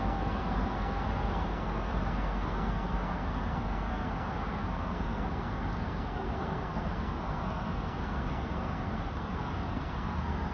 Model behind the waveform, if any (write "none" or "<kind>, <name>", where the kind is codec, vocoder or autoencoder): codec, SNAC